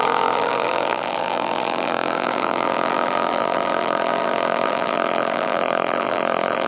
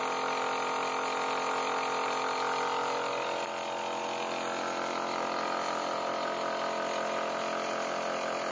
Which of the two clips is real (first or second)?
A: second